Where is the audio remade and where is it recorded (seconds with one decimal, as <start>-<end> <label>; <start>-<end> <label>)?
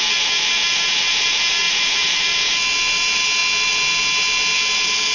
0.0-5.1 recorded